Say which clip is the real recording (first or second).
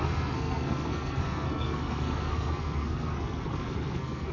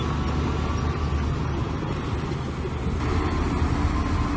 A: second